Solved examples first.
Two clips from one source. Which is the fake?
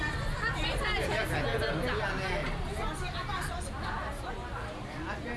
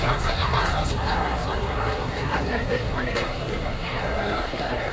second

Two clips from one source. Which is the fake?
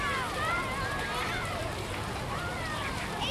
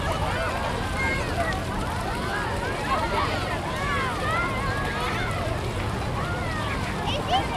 first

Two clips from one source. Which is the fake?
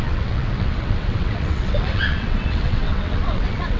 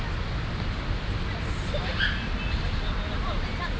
first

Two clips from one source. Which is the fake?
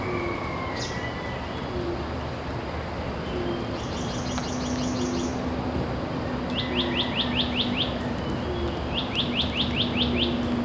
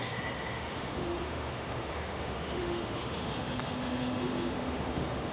second